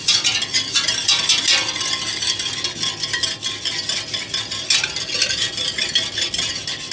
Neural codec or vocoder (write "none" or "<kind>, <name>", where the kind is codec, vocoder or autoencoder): none